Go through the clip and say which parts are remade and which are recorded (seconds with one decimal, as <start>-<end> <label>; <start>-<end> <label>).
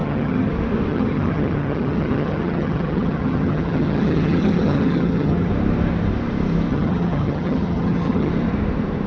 0.0-0.5 remade; 0.5-0.9 recorded; 0.9-5.5 remade; 5.5-6.7 recorded; 6.7-8.3 remade; 8.3-9.1 recorded